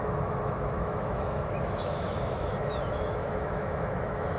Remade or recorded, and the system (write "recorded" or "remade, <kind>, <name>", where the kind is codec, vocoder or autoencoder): remade, autoencoder, DAC-VAE